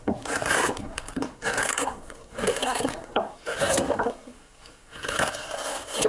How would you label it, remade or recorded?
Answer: remade